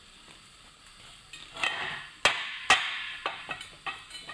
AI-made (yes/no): no